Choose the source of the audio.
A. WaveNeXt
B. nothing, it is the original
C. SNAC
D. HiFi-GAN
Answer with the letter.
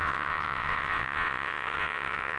A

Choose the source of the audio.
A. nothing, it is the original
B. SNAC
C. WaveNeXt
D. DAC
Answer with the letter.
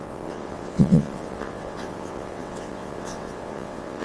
C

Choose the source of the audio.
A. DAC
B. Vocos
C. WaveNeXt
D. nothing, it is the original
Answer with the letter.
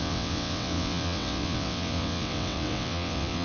C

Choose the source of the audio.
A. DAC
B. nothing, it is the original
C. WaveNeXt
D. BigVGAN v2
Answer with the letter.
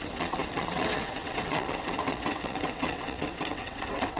C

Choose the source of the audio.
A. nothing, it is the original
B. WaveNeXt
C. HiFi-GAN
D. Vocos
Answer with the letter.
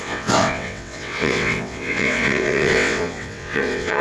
B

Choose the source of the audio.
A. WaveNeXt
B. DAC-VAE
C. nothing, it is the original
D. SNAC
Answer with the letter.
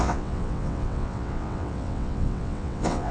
A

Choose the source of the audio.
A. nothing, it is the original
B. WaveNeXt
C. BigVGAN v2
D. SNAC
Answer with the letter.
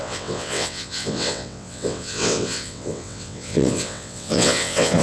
B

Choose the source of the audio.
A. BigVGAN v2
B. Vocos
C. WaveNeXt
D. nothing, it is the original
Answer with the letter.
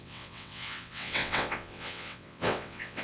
C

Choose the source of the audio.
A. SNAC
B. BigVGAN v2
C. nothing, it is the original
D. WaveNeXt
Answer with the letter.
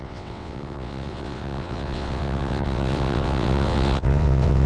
D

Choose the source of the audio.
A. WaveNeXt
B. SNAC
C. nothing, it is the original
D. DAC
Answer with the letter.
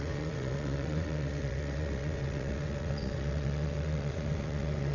A